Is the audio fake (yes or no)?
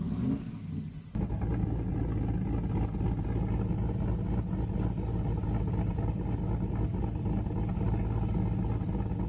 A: no